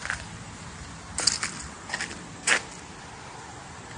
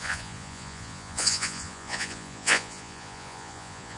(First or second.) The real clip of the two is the first